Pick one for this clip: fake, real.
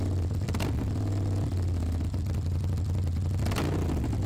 real